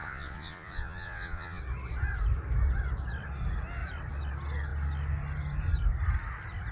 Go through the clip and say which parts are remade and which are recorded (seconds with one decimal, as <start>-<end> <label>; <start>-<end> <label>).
0.0-1.6 remade; 1.6-6.7 recorded